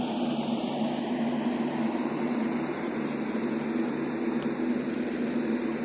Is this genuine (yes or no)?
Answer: yes